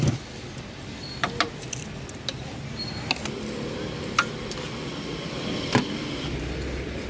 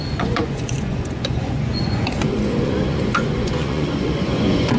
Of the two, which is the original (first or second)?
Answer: first